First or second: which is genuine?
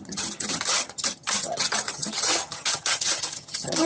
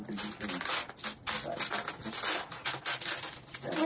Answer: second